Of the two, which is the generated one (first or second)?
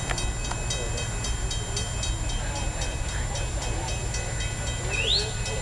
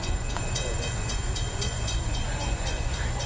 second